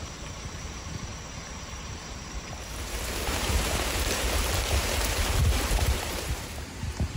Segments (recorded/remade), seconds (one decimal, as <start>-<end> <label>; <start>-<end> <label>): 0.0-7.2 remade